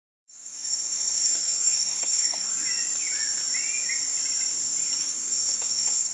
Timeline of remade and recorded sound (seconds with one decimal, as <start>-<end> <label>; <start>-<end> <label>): 0.0-2.5 remade; 2.5-5.0 recorded; 5.0-6.1 remade

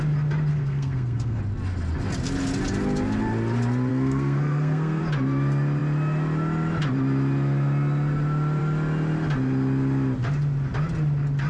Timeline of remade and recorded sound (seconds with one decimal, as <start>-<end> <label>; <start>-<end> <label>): 0.0-0.5 recorded; 0.5-1.4 remade; 1.4-3.9 recorded; 3.9-5.0 remade; 5.0-11.5 recorded

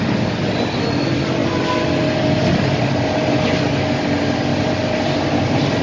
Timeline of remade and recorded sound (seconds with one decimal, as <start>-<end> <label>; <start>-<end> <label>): 0.0-5.8 recorded

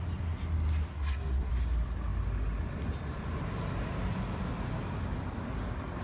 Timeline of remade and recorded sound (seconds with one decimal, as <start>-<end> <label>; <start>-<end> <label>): 0.0-0.9 recorded; 0.9-1.5 remade; 1.5-6.0 recorded

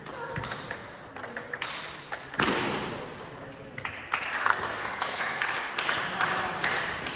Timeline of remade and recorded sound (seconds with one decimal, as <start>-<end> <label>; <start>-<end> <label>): 0.0-4.5 recorded; 4.5-5.7 remade; 5.7-7.2 recorded

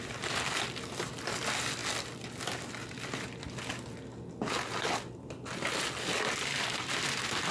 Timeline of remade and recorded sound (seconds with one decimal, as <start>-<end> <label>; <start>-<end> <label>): 0.0-7.5 recorded

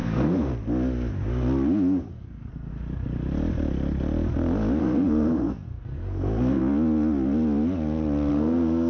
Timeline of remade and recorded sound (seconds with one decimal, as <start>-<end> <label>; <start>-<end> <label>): 0.0-0.5 remade; 0.5-2.1 recorded; 2.1-2.7 remade; 2.7-4.8 recorded; 4.8-6.6 remade; 6.6-8.3 recorded; 8.3-8.9 remade